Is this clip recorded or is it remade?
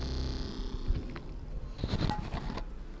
recorded